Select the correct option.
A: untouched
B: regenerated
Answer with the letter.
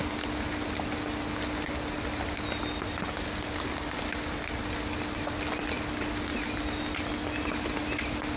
A